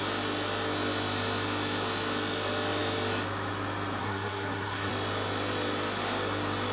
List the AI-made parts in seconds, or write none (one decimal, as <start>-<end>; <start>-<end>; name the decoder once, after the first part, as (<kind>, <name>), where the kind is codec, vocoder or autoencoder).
4.0-4.9 (codec, SNAC)